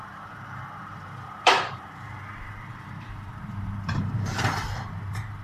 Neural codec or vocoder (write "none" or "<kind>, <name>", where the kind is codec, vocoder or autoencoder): vocoder, BigVGAN v2